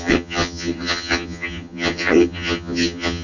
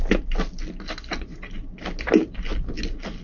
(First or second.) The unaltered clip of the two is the second